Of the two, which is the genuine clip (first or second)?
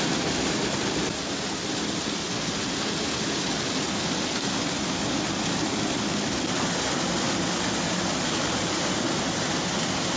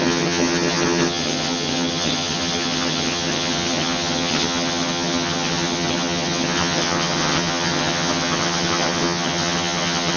first